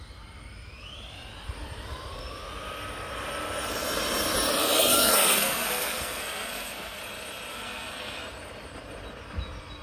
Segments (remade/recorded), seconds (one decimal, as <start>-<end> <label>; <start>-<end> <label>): 0.0-4.6 recorded; 4.6-7.0 remade; 7.0-7.5 recorded; 7.5-8.2 remade; 8.2-9.8 recorded